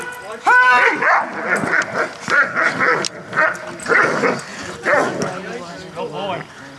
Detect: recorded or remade recorded